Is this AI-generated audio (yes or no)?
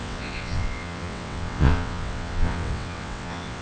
yes